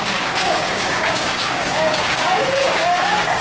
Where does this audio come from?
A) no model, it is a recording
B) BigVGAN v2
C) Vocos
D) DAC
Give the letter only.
D